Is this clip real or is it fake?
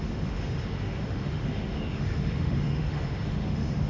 fake